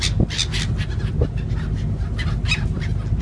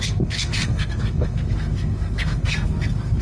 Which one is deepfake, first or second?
second